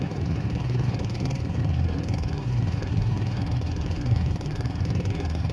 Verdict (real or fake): fake